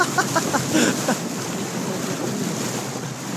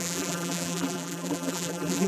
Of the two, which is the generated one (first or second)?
second